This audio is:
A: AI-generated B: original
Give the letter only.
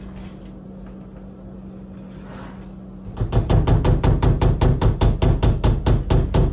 B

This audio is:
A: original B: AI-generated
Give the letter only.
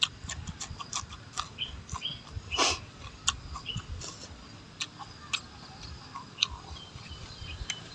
A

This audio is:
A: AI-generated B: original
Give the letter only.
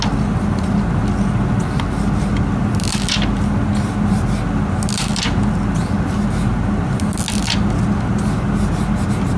B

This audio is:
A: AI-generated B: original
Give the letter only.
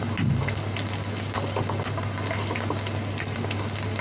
B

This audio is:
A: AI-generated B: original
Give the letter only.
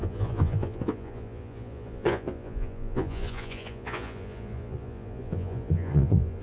A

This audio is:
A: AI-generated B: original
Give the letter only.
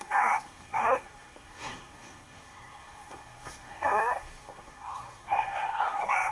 A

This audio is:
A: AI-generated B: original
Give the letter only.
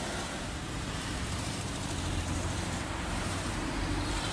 A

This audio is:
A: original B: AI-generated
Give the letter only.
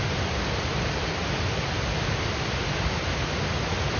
A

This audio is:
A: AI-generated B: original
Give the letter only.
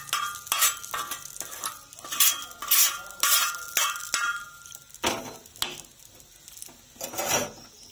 B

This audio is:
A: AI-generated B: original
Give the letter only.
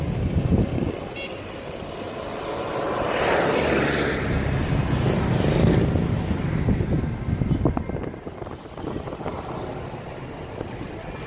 B